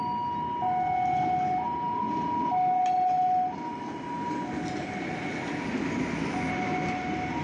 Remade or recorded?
recorded